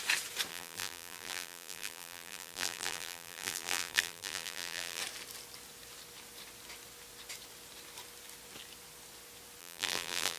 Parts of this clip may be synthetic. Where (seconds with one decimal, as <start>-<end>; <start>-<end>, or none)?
0.5-5.0; 9.6-10.4